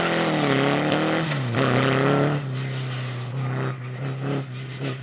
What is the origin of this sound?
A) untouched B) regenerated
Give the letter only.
A